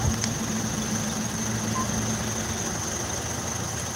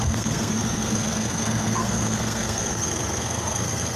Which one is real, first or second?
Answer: first